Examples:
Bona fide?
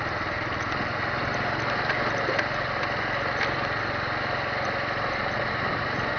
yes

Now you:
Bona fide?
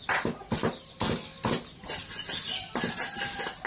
yes